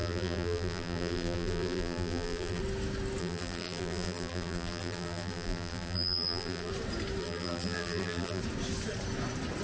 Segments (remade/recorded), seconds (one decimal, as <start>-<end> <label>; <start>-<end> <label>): 0.0-2.6 remade; 2.6-3.2 recorded; 3.2-6.7 remade; 6.7-7.2 recorded; 7.2-8.4 remade; 8.4-9.6 recorded